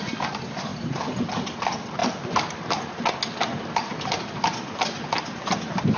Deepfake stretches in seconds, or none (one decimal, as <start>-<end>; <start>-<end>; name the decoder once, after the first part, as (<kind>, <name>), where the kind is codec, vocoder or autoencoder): none